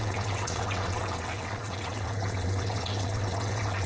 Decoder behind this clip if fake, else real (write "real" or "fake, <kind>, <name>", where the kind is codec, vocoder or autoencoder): fake, vocoder, WaveNeXt